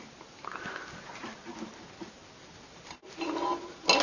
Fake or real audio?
real